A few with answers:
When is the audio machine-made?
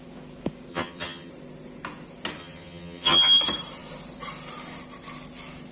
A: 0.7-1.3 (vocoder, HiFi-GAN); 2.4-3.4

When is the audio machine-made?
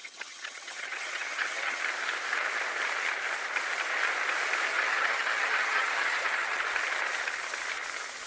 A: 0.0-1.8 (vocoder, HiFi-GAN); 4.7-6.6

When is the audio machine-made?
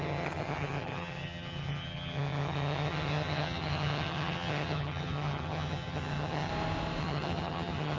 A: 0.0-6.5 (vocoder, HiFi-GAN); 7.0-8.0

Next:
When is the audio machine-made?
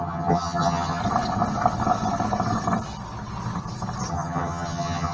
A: 0.0-1.0 (vocoder, HiFi-GAN); 4.1-5.1